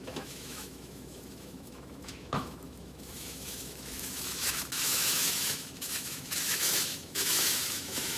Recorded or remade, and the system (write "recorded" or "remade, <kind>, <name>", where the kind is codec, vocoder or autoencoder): remade, autoencoder, DAC-VAE